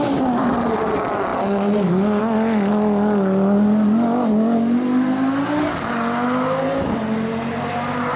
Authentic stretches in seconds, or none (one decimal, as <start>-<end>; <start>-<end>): 0.0-8.2